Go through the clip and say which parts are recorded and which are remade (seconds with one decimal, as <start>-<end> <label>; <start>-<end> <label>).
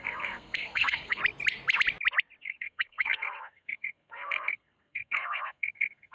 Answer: 0.0-1.2 remade; 1.2-2.4 recorded; 2.4-6.1 remade